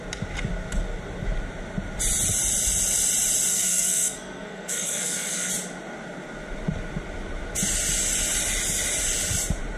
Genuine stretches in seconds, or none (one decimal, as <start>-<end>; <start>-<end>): 0.0-3.5; 5.5-9.8